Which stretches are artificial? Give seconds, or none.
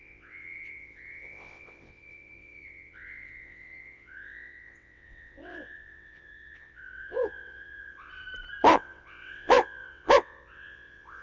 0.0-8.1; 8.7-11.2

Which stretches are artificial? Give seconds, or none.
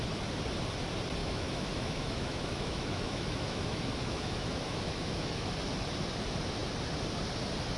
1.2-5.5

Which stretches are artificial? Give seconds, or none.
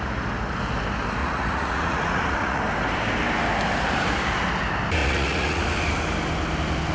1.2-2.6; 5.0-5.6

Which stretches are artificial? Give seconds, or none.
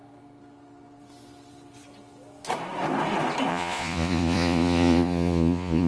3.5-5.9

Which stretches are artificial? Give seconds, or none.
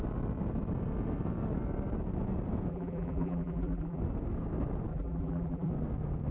2.7-4.0; 4.9-5.7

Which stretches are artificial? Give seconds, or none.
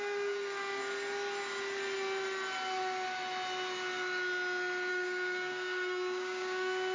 0.0-0.8; 4.9-6.9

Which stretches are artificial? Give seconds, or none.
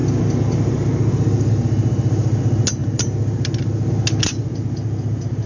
none